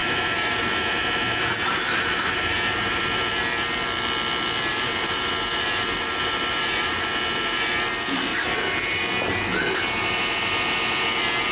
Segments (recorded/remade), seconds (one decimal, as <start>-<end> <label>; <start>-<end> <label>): 0.0-3.3 remade; 3.3-4.7 recorded; 4.7-7.7 remade; 7.7-8.3 recorded; 8.3-9.0 remade; 9.0-11.5 recorded